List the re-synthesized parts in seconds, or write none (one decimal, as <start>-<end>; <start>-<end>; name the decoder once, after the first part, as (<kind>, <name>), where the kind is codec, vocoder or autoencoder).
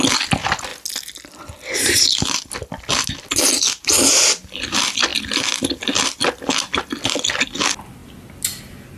5.1-6.4 (vocoder, BigVGAN v2)